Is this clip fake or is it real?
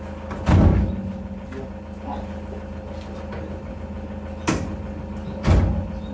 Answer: real